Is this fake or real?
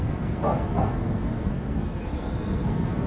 fake